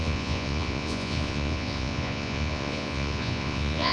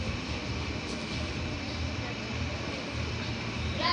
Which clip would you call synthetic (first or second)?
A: first